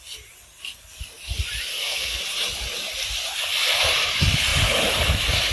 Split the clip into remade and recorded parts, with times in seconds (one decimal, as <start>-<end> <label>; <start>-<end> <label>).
0.0-1.7 recorded; 1.7-2.2 remade; 2.2-5.5 recorded